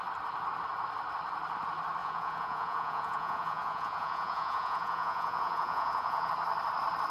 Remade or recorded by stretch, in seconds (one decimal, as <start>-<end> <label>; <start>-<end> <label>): 0.0-2.0 recorded; 2.0-6.3 remade; 6.3-7.1 recorded